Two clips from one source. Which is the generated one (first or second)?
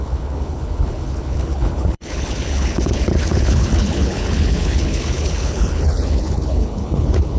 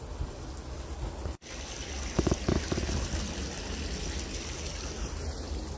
first